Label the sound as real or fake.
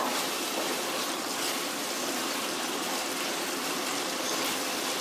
fake